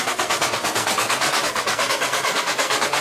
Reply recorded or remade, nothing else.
remade